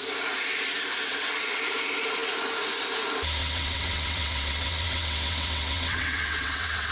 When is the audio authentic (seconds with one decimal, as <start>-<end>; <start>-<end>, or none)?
0.0-1.1; 1.6-3.4